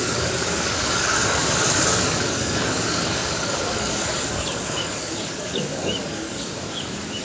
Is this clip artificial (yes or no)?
yes